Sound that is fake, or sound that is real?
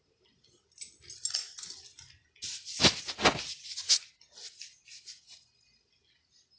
real